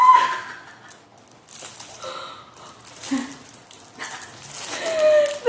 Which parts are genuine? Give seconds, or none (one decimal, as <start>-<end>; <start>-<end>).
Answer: 0.0-5.5